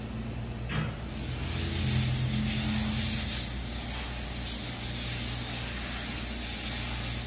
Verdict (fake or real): real